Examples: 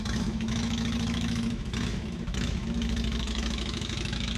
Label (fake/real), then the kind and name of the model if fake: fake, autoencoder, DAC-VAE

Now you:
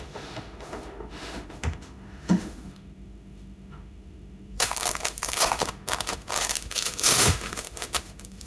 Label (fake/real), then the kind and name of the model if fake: fake, autoencoder, DAC-VAE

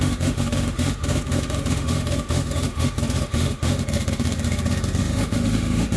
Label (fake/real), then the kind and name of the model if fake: fake, autoencoder, DAC-VAE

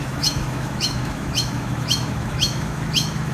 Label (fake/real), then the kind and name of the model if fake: fake, autoencoder, DAC-VAE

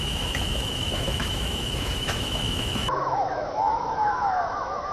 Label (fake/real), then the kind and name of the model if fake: fake, autoencoder, DAC-VAE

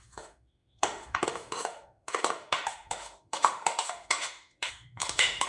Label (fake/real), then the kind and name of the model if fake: fake, autoencoder, DAC-VAE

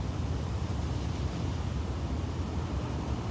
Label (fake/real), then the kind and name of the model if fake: real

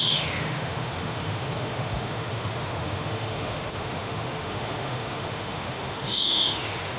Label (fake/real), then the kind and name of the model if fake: fake, autoencoder, DAC-VAE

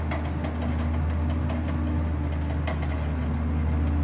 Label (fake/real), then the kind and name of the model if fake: real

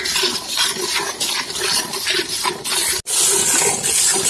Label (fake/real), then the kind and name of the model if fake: real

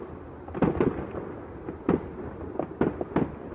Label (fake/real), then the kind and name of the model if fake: real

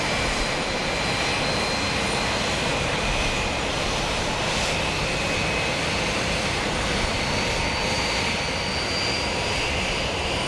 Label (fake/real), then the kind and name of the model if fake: real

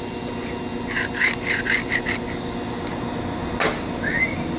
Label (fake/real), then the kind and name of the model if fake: real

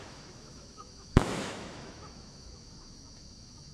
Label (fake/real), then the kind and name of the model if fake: fake, autoencoder, DAC-VAE